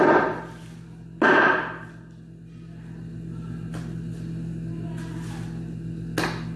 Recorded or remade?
recorded